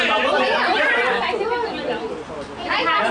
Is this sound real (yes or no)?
yes